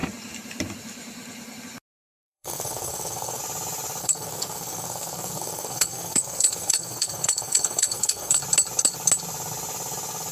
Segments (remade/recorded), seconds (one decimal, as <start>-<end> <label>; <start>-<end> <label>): 0.0-2.0 recorded; 2.0-3.4 remade; 3.4-4.0 recorded; 4.0-8.4 remade; 8.4-10.3 recorded